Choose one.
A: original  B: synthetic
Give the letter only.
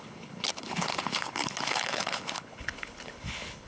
B